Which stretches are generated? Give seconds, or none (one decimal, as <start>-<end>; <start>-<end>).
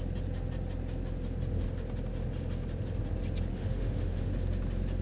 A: 3.5-4.3